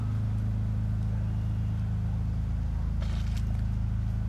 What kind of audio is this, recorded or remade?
recorded